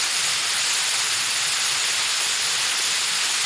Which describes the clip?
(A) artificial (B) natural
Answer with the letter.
B